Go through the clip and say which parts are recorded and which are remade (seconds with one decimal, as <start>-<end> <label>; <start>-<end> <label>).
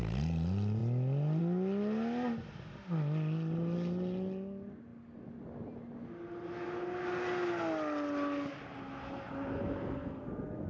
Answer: 0.0-10.7 recorded